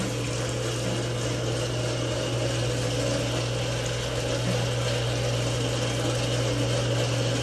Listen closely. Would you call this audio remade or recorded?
recorded